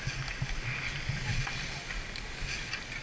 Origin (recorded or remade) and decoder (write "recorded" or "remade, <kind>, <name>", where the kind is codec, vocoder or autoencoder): recorded